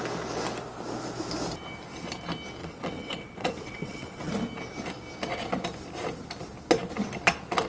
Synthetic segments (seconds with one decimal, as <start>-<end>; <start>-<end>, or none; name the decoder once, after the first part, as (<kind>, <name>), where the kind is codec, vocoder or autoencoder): 2.6-4.3 (vocoder, WaveNeXt)